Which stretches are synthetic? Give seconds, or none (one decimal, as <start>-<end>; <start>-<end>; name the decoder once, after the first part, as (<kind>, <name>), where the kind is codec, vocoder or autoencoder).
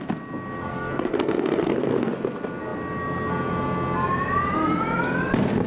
0.7-2.1 (codec, SNAC)